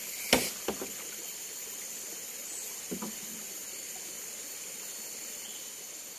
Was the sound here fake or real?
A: real